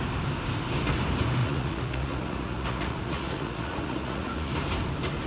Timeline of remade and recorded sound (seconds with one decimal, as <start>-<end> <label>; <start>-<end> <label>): 0.0-1.4 recorded; 1.4-4.5 remade; 4.5-5.3 recorded